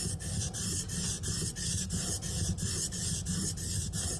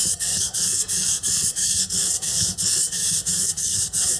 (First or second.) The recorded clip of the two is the first